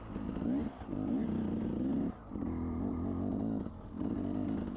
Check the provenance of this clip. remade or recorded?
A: recorded